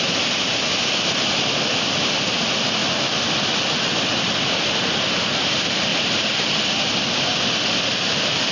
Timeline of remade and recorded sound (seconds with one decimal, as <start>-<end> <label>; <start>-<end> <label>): 0.0-5.9 recorded; 5.9-7.4 remade; 7.4-8.5 recorded